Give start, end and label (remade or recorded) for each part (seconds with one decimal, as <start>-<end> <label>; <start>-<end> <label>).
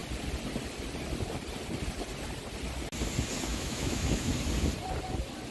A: 0.0-3.5 recorded; 3.5-4.3 remade; 4.3-5.5 recorded